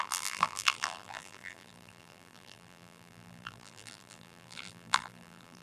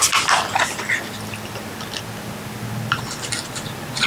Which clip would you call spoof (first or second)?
first